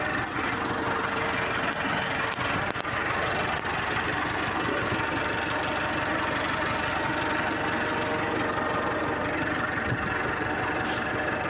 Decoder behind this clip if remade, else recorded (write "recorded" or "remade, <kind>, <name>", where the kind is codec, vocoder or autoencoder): recorded